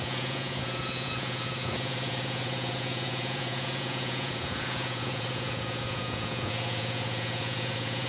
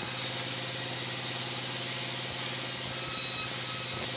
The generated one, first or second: first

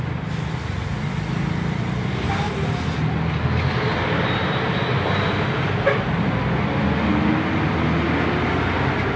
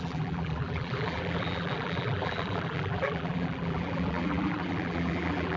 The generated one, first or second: second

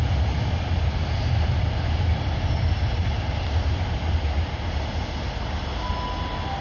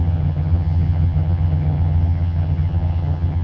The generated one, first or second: second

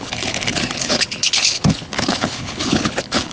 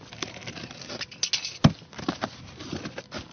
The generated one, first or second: first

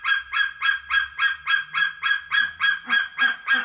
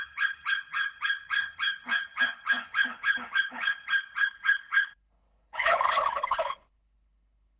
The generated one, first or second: second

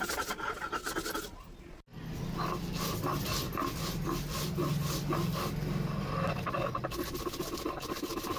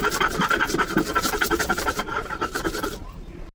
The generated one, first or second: second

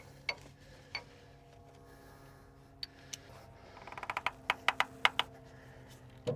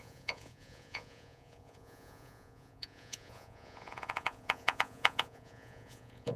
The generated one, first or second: second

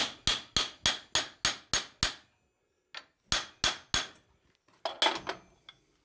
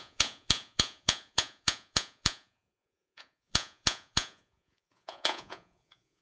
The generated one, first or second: second